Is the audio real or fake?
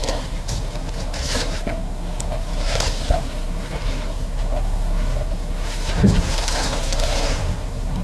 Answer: fake